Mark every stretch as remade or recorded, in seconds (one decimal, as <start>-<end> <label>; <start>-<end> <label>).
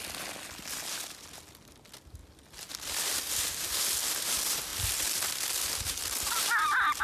0.0-7.0 recorded